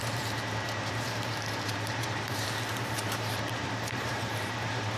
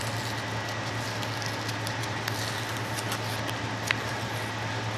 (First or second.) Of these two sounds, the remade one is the first